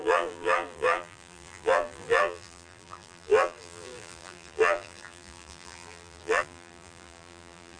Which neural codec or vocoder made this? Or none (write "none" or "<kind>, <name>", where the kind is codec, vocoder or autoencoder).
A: vocoder, BigVGAN v2